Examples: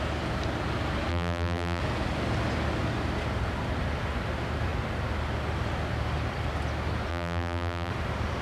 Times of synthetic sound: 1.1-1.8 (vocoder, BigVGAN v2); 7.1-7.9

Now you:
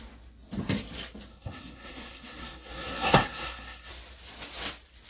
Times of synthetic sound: 1.3-3.9 (codec, SNAC)

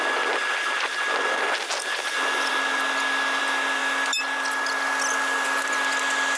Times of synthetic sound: none

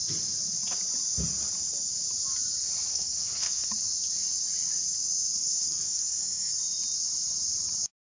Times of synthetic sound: 2.9-3.7 (codec, SNAC); 5.3-6.5

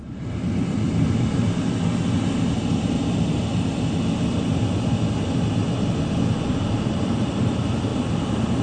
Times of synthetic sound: none

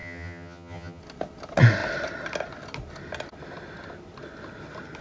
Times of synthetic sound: 0.0-1.0 (vocoder, HiFi-GAN)

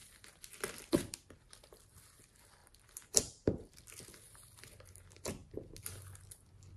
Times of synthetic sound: 2.6-3.8 (vocoder, BigVGAN v2)

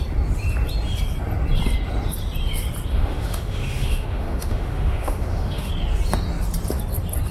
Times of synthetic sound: 2.9-5.7 (autoencoder, DAC-VAE)